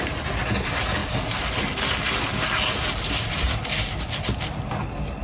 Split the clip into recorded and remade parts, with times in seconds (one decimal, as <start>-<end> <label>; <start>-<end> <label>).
0.0-5.2 recorded